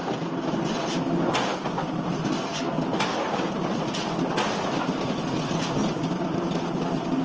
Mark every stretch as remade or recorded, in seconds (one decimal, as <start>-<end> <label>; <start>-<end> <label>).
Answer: 0.0-7.2 recorded